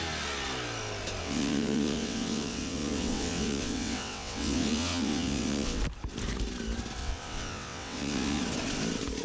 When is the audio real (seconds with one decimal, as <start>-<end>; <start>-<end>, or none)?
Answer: 0.0-1.2; 5.8-7.0; 8.4-9.2